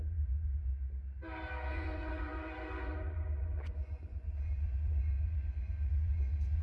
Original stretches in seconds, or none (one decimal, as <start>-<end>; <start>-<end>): 0.7-1.7